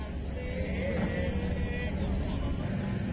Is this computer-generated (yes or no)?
no